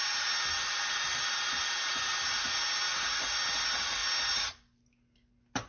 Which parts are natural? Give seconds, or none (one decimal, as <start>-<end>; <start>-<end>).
0.0-4.0; 4.8-5.7